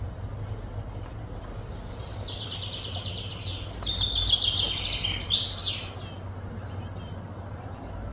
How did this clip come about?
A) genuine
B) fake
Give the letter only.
A